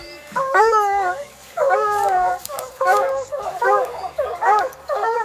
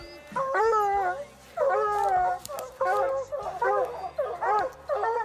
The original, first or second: second